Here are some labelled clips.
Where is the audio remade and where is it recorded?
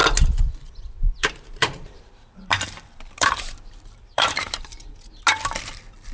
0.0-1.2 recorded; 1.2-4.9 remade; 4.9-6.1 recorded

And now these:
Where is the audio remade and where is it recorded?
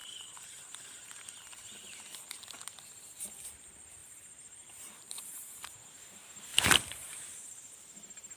0.0-0.9 remade; 0.9-4.0 recorded; 4.0-5.7 remade; 5.7-6.5 recorded; 6.5-7.7 remade; 7.7-8.4 recorded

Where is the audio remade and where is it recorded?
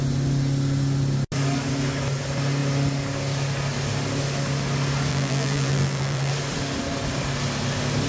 0.0-5.1 recorded; 5.1-6.3 remade; 6.3-8.1 recorded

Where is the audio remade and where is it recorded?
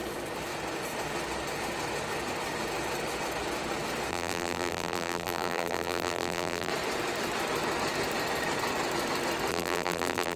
0.0-4.1 recorded; 4.1-6.7 remade; 6.7-9.5 recorded; 9.5-10.4 remade